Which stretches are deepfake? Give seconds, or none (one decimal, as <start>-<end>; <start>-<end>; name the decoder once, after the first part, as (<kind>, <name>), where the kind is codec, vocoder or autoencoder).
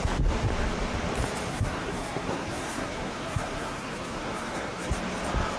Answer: 1.5-4.9 (codec, SNAC)